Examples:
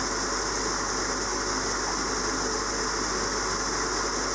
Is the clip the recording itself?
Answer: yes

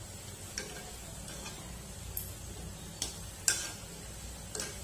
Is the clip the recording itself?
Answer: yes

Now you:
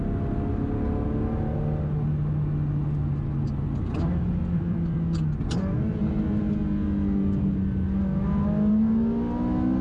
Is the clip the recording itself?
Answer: yes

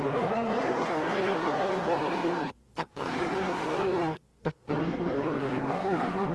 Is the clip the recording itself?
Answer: no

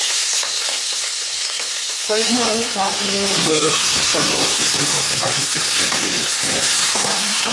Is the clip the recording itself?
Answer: no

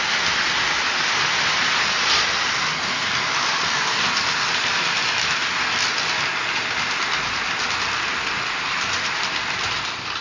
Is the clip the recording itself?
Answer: yes